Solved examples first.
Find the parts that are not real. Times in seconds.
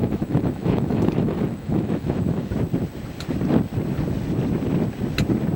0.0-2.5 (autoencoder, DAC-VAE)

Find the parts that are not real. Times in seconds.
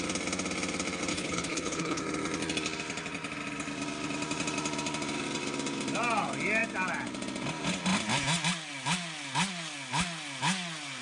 1.1-2.0 (codec, HILCodec)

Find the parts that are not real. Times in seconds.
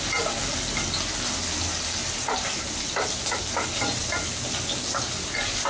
none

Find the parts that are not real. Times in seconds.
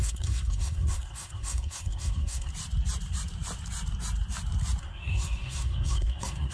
0.0-2.5 (codec, SNAC); 4.8-6.5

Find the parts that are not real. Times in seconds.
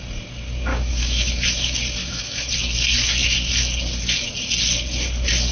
0.7-1.3 (autoencoder, DAC-VAE); 2.0-2.5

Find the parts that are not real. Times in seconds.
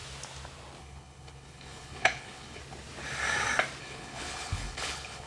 0.8-2.6 (codec, HILCodec); 3.8-5.3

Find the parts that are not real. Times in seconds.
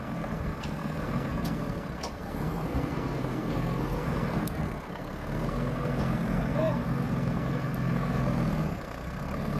0.0-9.6 (codec, SNAC)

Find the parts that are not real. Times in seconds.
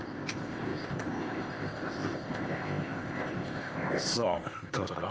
0.0-5.1 (codec, ZipCodec)